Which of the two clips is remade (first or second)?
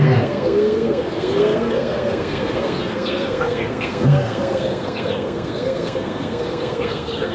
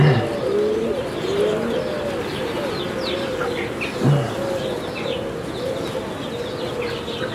first